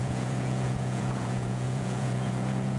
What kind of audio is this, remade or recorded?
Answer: remade